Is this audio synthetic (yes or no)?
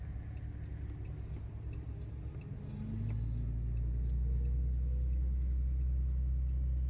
no